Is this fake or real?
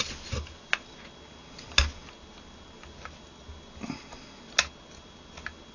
real